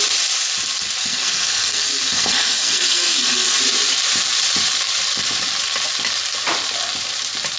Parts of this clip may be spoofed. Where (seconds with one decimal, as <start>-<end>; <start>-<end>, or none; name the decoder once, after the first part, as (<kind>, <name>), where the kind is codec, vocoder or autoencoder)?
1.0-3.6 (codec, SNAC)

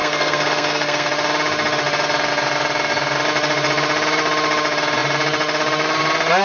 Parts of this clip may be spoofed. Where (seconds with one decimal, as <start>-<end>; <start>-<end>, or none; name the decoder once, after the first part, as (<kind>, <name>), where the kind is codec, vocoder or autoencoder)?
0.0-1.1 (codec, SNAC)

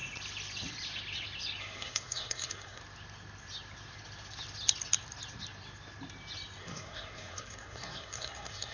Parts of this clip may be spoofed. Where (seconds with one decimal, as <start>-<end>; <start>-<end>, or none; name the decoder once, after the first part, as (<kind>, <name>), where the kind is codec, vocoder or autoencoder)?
1.6-2.8 (codec, SNAC); 6.6-8.7